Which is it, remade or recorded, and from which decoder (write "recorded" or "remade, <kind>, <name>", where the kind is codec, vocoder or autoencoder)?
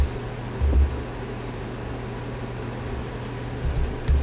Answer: recorded